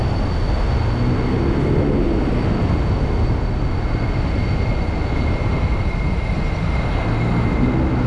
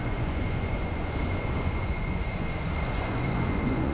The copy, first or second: second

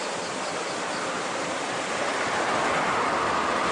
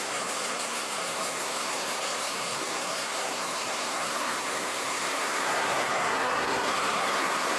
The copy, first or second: second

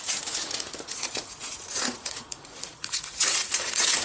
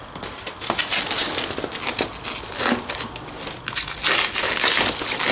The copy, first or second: first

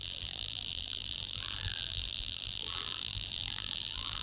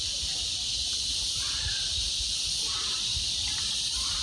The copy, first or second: first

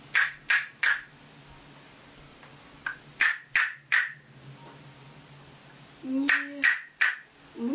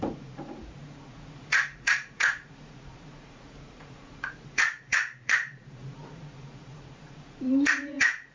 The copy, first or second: second